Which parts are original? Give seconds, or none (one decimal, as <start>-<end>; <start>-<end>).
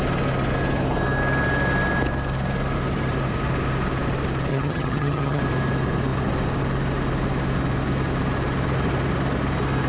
0.0-4.5; 5.4-9.9